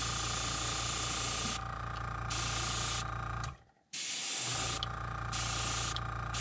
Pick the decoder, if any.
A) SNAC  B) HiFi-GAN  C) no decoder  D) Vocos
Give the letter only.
C